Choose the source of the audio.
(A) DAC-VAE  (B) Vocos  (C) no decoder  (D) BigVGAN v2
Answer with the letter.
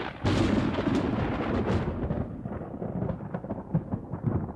C